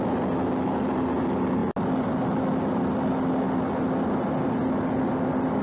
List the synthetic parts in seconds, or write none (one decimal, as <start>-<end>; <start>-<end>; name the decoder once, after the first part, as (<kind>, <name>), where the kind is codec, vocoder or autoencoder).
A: none